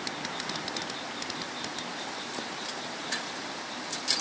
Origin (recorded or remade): recorded